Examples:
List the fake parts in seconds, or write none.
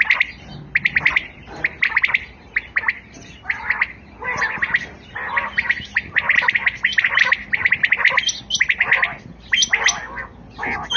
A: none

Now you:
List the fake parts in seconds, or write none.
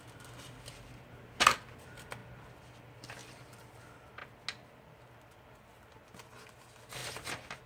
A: 3.2-3.8 (vocoder, BigVGAN v2)